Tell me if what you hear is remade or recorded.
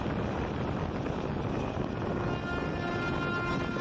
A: recorded